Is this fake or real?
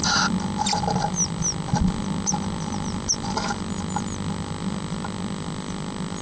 real